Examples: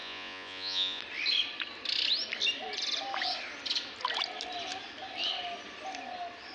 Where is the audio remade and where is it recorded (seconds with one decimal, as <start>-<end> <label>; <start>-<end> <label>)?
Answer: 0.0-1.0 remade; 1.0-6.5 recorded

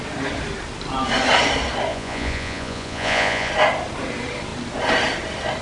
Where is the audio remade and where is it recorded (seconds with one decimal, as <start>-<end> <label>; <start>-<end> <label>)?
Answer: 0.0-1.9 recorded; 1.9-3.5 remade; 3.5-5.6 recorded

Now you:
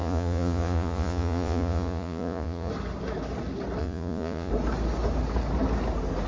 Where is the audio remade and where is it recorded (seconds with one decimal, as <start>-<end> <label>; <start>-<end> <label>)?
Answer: 0.0-2.7 remade; 2.7-3.8 recorded; 3.8-4.5 remade; 4.5-6.3 recorded